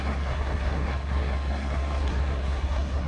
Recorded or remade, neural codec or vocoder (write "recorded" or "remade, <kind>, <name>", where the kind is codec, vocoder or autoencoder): remade, codec, SNAC